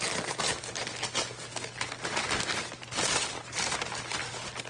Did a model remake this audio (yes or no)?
no